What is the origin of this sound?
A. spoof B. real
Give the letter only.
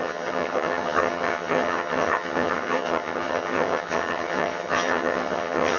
A